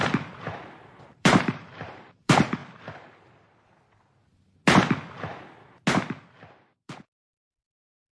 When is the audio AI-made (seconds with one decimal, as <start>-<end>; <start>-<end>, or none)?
0.0-2.6; 6.8-8.1